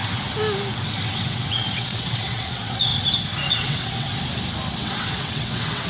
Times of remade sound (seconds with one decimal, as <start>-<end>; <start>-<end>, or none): 1.1-2.9; 3.5-4.1; 4.7-5.9